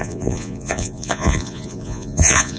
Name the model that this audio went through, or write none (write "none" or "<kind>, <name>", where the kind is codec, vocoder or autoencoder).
vocoder, Vocos